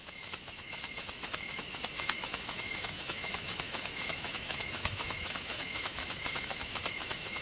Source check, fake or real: fake